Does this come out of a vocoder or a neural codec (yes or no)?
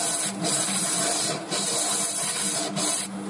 no